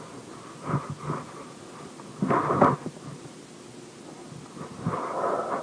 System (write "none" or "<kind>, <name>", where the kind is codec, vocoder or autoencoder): none